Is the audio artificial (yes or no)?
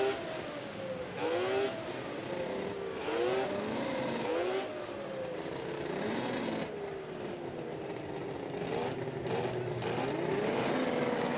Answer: no